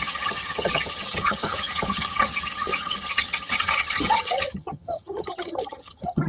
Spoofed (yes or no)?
yes